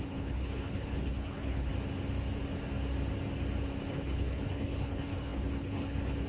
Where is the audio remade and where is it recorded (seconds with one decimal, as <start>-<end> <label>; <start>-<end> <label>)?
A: 0.0-1.7 remade; 1.7-3.9 recorded; 3.9-6.3 remade